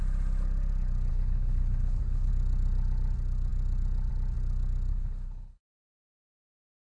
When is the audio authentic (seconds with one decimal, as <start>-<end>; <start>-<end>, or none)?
0.0-1.1; 2.3-4.9; 5.6-6.9